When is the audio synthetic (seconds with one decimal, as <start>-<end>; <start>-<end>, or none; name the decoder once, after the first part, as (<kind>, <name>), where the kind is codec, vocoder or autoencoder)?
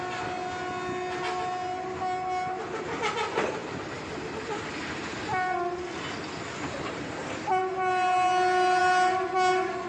none